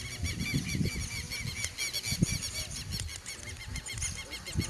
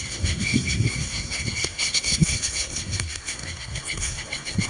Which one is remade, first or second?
second